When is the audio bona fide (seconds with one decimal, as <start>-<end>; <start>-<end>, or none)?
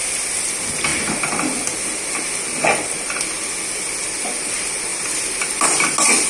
0.0-6.3